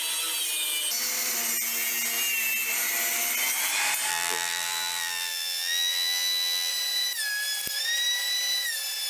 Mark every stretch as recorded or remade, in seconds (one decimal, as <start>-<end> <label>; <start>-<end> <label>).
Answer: 0.0-4.1 recorded; 4.1-6.7 remade; 6.7-9.1 recorded